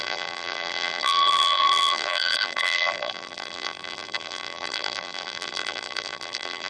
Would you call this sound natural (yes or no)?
no